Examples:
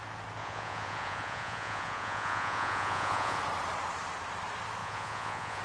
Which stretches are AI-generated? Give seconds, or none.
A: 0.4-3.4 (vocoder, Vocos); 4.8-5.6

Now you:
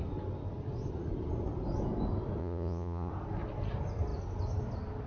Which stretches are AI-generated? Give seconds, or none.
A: 2.4-3.1 (vocoder, Vocos)

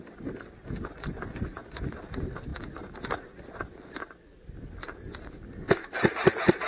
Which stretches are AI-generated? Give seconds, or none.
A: none

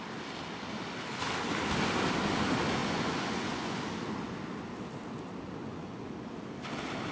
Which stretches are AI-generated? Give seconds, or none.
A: 2.8-3.8 (vocoder, Vocos); 5.6-6.1

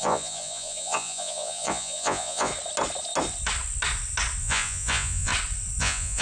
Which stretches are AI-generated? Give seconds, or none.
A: 0.0-2.5 (vocoder, Vocos); 4.4-5.3; 5.8-6.2